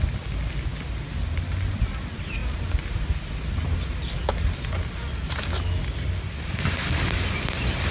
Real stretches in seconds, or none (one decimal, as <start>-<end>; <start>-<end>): 0.0-7.9